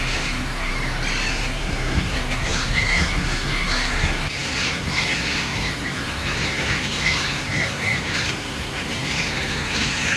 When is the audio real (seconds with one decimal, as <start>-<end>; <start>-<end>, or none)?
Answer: 0.7-1.3